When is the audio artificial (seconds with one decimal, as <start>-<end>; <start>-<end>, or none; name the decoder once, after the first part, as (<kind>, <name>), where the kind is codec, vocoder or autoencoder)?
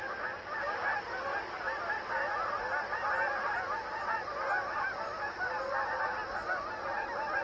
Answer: none